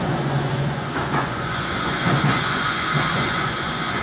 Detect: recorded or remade remade